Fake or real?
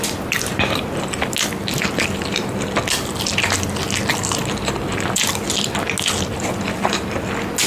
real